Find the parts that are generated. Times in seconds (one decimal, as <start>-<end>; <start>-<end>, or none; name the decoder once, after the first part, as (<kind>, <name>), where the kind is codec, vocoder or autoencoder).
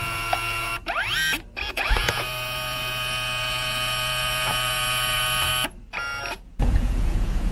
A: 0.0-0.7 (vocoder, Vocos); 1.7-5.5; 6.3-7.5